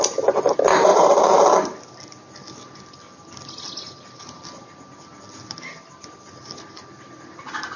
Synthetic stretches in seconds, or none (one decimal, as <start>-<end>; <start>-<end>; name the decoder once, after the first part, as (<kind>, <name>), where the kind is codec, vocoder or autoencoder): 0.9-1.4 (vocoder, BigVGAN v2)

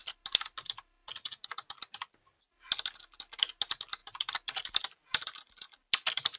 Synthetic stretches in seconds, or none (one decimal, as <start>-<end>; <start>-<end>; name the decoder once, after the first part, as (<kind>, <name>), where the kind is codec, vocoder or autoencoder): 0.0-1.1 (vocoder, BigVGAN v2); 4.0-4.8

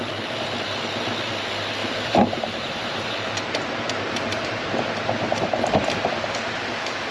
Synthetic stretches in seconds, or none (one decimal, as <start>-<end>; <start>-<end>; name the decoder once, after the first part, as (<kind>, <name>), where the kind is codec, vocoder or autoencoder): 1.8-6.1 (vocoder, BigVGAN v2)

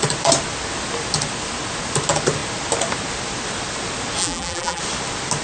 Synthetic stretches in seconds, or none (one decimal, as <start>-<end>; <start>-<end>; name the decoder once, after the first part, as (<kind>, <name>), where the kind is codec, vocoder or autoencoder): 4.2-4.8 (vocoder, BigVGAN v2)